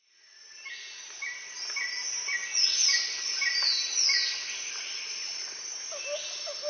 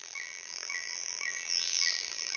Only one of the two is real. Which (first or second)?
first